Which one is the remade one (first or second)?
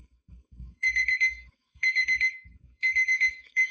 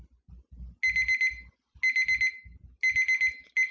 first